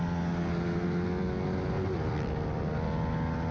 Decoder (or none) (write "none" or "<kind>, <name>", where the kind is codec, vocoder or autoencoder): none